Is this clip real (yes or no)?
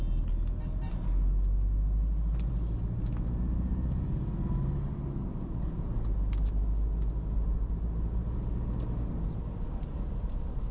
yes